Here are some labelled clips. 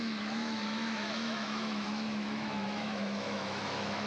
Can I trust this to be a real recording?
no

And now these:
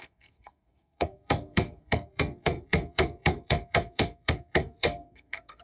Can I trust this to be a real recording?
no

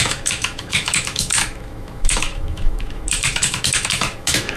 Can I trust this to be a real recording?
no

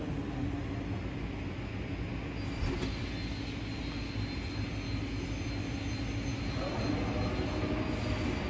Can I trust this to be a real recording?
yes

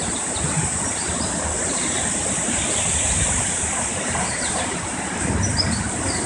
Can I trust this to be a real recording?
no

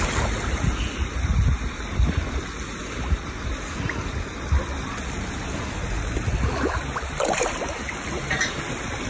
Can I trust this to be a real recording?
yes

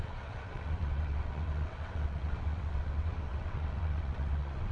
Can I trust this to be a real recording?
no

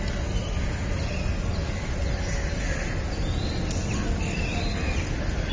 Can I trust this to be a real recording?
yes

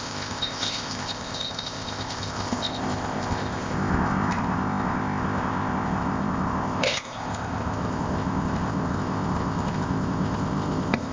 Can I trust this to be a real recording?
no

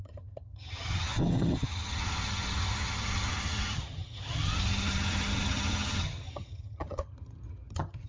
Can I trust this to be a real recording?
no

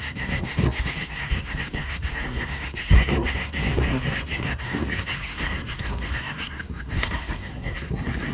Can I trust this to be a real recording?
no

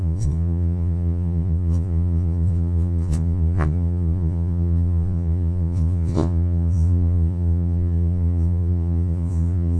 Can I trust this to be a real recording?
no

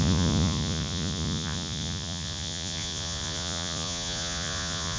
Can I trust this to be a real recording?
no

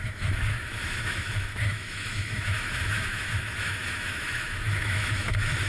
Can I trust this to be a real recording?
no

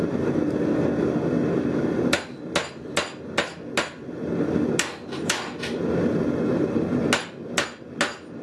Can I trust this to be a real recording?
yes